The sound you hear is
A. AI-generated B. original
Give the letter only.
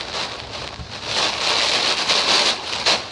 B